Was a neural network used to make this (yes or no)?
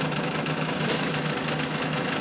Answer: yes